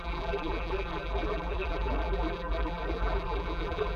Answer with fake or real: fake